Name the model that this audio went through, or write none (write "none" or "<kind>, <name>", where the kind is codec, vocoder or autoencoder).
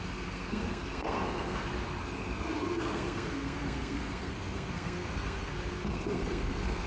codec, SNAC